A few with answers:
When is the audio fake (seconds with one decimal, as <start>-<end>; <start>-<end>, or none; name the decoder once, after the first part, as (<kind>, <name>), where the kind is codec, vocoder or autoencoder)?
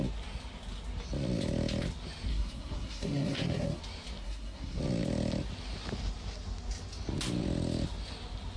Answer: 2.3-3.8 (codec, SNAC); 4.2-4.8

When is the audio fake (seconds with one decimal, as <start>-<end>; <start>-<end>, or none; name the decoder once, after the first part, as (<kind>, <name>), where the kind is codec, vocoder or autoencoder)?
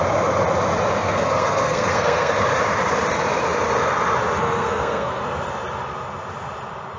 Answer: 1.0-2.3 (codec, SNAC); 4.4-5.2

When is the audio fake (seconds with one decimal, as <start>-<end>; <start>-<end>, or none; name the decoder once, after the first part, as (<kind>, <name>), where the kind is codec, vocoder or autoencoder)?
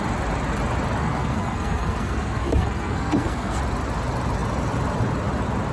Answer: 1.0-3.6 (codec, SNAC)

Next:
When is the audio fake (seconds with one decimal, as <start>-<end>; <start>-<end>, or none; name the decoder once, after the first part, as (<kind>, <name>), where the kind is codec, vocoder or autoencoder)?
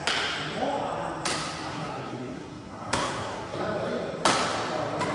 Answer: 1.7-3.6 (codec, SNAC)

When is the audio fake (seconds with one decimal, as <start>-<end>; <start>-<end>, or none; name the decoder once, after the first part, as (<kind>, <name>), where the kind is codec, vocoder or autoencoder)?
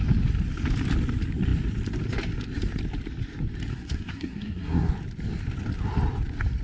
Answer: 3.7-4.9 (codec, SNAC)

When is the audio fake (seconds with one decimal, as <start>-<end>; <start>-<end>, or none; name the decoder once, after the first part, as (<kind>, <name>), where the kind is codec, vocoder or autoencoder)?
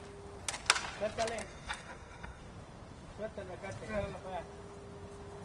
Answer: 1.4-2.4 (codec, SNAC)